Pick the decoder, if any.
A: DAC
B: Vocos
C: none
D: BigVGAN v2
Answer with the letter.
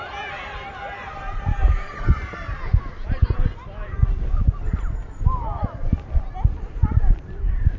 C